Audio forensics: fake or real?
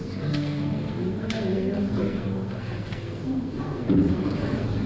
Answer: fake